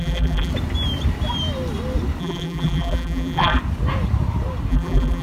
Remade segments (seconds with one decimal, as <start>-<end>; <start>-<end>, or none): 0.0-0.5; 2.2-3.6; 4.7-5.2

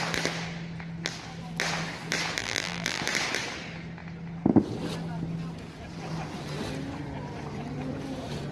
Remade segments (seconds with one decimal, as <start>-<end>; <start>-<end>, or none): 2.4-3.0

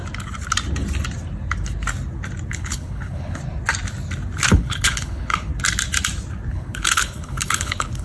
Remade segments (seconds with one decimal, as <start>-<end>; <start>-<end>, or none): 2.5-3.4; 4.5-5.5; 6.5-8.0

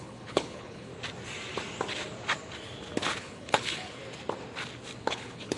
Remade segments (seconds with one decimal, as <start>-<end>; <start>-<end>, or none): 0.0-0.9; 3.2-4.0; 5.0-5.6

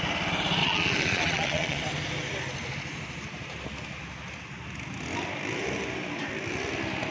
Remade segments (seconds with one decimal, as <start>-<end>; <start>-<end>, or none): 0.6-1.8